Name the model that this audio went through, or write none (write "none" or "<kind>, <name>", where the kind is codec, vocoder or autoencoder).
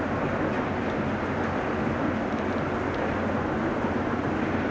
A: none